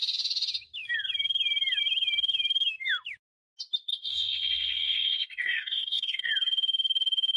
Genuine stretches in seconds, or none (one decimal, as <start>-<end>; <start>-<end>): 0.0-3.9; 6.3-7.4